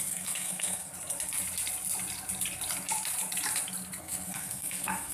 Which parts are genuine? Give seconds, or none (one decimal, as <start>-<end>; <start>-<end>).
0.9-4.0